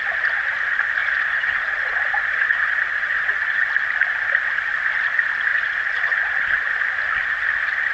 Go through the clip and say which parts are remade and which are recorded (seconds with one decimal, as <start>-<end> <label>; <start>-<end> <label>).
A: 0.0-1.0 recorded; 1.0-3.6 remade; 3.6-5.5 recorded; 5.5-6.7 remade; 6.7-7.9 recorded

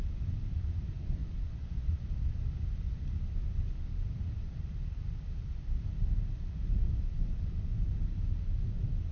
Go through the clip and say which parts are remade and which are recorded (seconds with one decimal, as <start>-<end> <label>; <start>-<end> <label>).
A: 0.0-1.2 recorded; 1.2-1.9 remade; 1.9-9.1 recorded